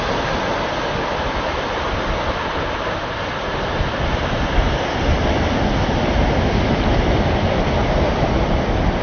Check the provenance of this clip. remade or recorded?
recorded